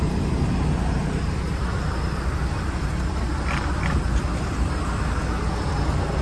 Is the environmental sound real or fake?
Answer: real